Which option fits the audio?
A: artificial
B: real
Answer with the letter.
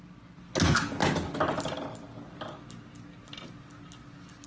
B